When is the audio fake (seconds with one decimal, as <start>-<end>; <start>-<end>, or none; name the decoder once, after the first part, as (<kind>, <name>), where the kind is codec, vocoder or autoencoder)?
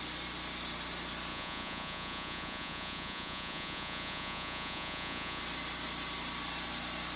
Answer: 1.3-5.4 (vocoder, Vocos)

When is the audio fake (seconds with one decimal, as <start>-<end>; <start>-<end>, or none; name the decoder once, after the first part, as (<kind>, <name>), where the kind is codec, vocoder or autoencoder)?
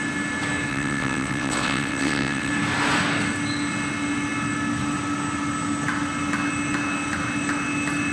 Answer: 0.7-2.5 (vocoder, WaveNeXt)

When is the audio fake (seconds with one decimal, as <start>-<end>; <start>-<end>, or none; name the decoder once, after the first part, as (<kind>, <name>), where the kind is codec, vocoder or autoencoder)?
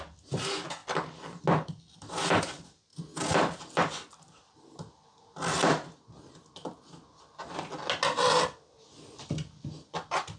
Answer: none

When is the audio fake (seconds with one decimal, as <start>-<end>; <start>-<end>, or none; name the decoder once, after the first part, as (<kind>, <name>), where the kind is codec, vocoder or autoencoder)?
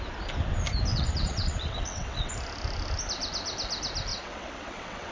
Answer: 0.9-2.3 (vocoder, WaveNeXt); 4.1-5.1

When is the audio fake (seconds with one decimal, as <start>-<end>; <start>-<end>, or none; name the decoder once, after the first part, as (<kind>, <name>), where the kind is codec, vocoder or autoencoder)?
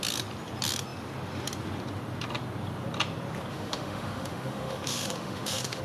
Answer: 3.5-5.8 (autoencoder, DAC-VAE)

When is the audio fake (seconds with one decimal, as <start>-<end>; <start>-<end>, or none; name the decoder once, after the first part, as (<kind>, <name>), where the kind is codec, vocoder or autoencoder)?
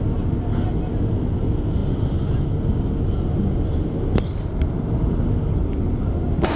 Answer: none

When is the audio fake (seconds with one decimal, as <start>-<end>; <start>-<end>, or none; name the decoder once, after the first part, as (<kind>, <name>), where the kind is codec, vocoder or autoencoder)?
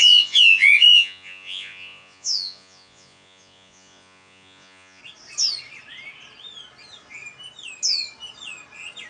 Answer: 0.0-5.0 (vocoder, Vocos)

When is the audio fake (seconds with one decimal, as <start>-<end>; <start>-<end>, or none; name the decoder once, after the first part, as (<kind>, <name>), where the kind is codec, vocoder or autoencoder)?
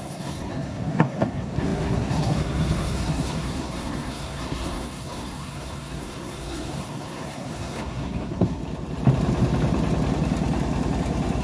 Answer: 0.0-8.6 (codec, SNAC)